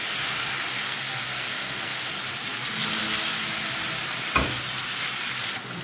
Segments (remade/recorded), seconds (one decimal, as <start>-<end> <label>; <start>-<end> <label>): 0.0-0.8 recorded; 0.8-2.1 remade; 2.1-5.8 recorded